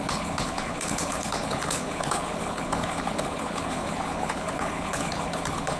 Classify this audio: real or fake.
fake